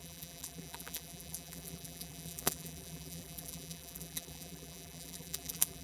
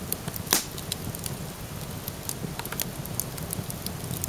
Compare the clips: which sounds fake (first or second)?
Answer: first